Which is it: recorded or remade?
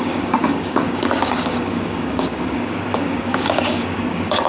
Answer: remade